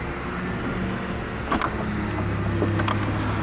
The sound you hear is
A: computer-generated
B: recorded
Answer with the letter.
B